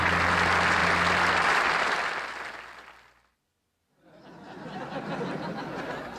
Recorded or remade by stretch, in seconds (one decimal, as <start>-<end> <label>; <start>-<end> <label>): 0.0-6.2 recorded